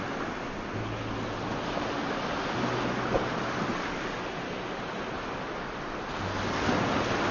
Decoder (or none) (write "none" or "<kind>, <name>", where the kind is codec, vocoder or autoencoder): none